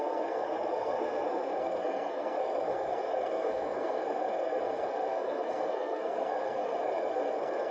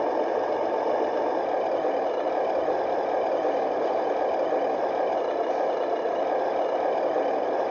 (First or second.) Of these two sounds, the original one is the second